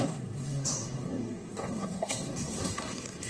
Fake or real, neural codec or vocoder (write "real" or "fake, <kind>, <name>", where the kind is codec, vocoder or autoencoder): fake, codec, SNAC